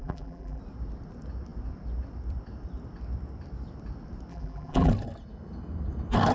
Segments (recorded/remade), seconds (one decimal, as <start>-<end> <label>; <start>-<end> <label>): 0.0-0.6 remade; 0.6-4.3 recorded; 4.3-4.9 remade; 4.9-6.3 recorded